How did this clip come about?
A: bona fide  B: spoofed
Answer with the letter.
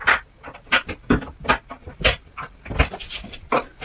A